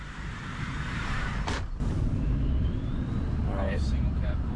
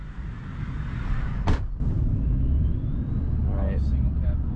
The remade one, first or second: first